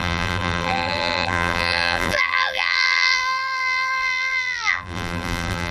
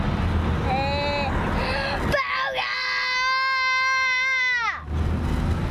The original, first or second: second